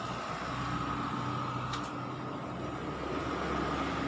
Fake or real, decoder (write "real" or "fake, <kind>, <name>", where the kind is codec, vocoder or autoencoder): real